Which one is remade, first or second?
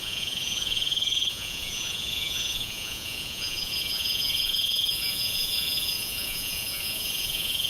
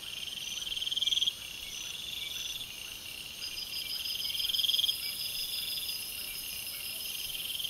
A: first